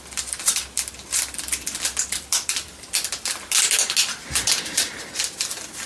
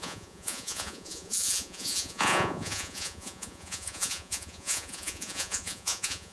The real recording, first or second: first